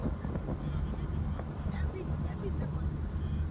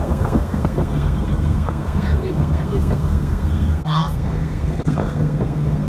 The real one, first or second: first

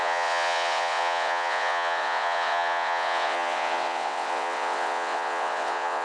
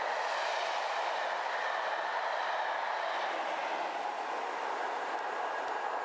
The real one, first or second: second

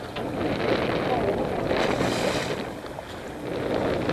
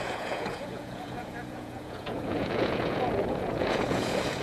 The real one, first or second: first